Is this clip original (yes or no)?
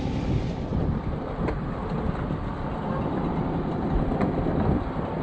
yes